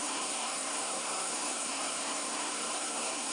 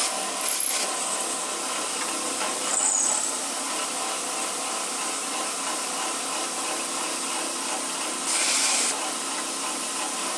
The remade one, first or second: first